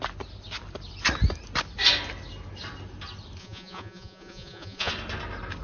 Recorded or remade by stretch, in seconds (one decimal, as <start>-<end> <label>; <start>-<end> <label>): 0.0-3.4 recorded; 3.4-4.9 remade; 4.9-5.6 recorded

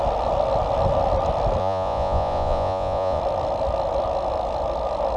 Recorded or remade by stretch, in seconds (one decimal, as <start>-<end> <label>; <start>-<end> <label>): 0.0-1.6 recorded; 1.6-3.2 remade; 3.2-5.2 recorded

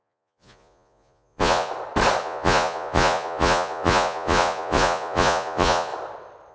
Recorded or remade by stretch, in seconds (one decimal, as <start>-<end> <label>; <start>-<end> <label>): 0.0-1.7 remade; 1.7-2.2 recorded; 2.2-5.9 remade; 5.9-6.5 recorded

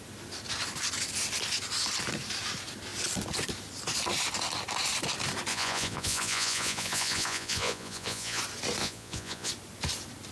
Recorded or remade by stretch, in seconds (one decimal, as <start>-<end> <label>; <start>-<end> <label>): 0.0-5.5 recorded; 5.5-8.4 remade; 8.4-8.8 recorded; 8.8-9.5 remade; 9.5-10.3 recorded

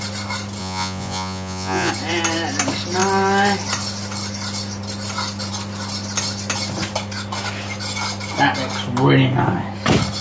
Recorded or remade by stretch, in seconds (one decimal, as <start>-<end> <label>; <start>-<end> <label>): 0.0-0.6 recorded; 0.6-1.9 remade; 1.9-10.2 recorded

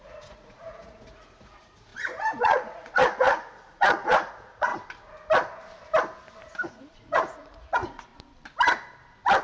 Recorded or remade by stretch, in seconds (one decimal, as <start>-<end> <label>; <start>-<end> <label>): 0.0-4.7 remade; 4.7-6.7 recorded; 6.7-8.1 remade; 8.1-9.4 recorded

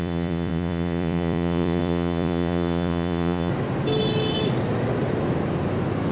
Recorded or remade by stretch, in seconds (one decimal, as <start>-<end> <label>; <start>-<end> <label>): 0.0-3.5 remade; 3.5-6.1 recorded